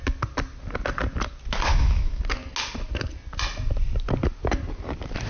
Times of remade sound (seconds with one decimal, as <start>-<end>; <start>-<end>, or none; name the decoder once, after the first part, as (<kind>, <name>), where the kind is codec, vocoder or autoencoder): 1.7-2.2 (autoencoder, DAC-VAE)